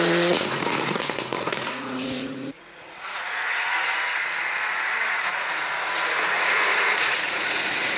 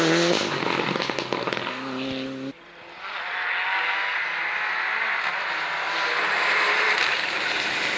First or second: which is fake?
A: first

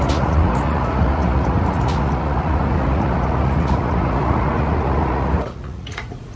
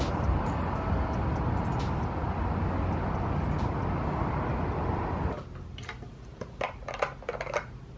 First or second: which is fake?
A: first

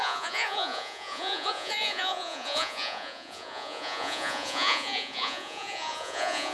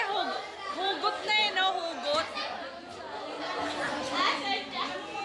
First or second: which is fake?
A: first